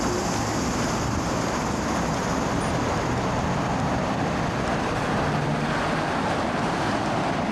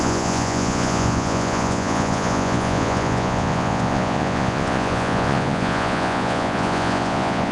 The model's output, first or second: second